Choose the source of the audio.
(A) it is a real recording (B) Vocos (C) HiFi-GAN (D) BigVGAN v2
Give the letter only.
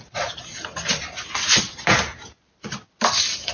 A